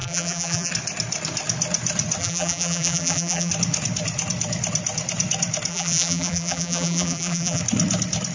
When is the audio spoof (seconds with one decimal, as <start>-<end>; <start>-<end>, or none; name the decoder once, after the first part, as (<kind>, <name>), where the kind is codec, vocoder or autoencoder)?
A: 0.0-0.7 (vocoder, BigVGAN v2); 2.2-3.5; 5.7-7.6